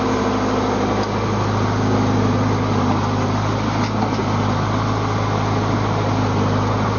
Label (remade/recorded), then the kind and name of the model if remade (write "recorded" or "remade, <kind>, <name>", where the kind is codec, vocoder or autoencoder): recorded